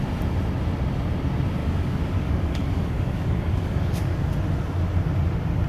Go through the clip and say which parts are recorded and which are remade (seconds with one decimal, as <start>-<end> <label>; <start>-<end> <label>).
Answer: 0.0-1.6 recorded; 1.6-4.3 remade; 4.3-5.7 recorded